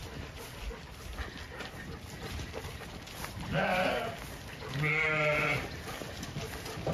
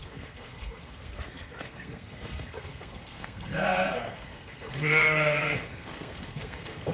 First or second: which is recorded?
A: first